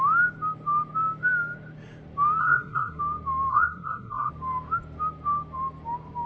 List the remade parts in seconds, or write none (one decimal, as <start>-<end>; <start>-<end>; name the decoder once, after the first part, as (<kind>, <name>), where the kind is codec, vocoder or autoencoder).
2.4-3.0 (codec, SNAC); 3.5-4.3